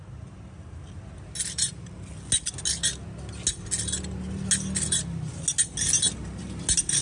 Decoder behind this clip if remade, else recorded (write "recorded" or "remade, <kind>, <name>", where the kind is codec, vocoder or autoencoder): recorded